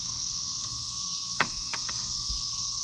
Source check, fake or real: fake